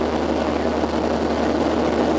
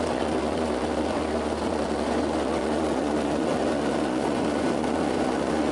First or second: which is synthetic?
second